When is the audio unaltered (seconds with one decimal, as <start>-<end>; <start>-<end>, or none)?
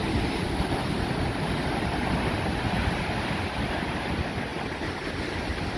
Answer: 0.0-5.8